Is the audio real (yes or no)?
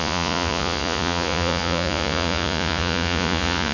no